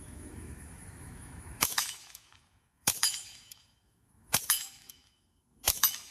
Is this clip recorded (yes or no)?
no